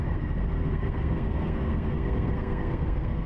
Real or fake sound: fake